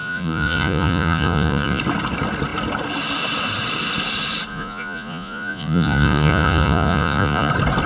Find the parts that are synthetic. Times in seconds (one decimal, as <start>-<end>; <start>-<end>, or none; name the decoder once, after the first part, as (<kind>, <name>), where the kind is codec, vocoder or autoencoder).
0.0-1.8 (vocoder, Vocos); 4.5-7.5